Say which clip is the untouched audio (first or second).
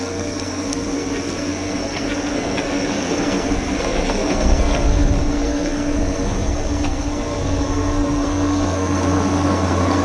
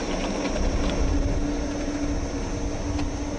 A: second